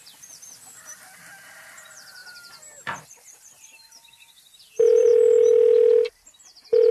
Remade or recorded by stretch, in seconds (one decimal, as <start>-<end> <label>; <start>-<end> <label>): 0.0-2.2 remade; 2.2-3.0 recorded; 3.0-5.1 remade; 5.1-6.1 recorded; 6.1-6.9 remade